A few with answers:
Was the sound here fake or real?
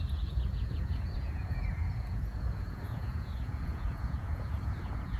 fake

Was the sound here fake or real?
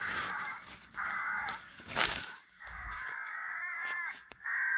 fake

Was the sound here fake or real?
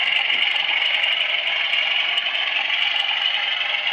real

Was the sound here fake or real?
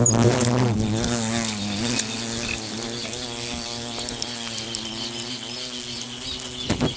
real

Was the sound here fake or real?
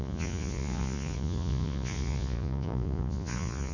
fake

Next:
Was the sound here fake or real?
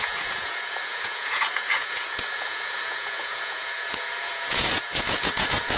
fake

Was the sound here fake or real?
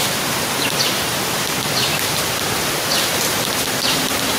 fake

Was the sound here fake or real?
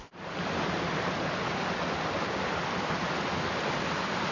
real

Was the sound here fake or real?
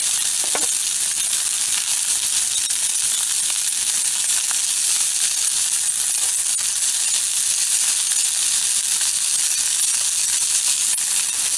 real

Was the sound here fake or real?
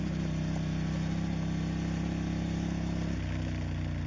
real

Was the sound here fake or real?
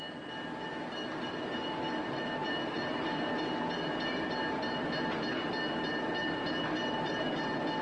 real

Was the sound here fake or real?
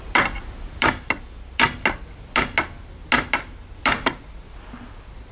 real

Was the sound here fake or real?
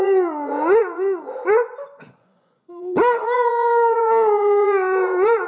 fake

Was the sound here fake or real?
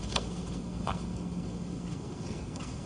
fake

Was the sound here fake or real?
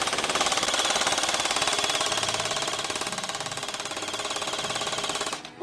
real